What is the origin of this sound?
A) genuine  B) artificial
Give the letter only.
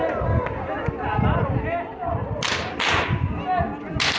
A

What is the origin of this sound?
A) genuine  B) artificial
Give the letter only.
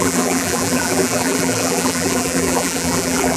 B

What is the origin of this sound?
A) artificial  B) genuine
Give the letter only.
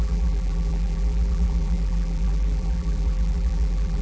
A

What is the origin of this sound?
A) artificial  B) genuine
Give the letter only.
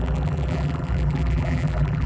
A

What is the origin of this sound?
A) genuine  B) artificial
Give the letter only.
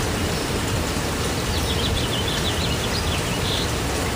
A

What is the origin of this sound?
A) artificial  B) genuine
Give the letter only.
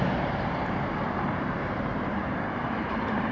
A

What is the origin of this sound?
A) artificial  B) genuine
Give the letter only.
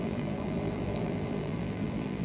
A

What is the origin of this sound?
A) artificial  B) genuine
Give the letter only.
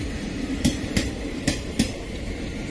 A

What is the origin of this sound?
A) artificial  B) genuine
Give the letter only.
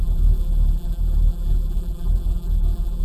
A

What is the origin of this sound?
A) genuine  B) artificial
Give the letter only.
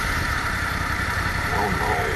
B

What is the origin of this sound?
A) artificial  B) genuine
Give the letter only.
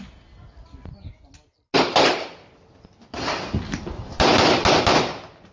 B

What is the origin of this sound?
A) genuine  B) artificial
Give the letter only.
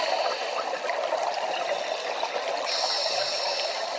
A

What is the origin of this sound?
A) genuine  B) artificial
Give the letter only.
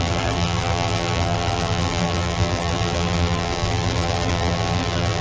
B